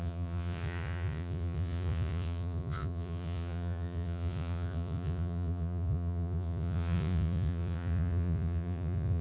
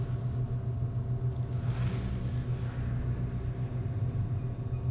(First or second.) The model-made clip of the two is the first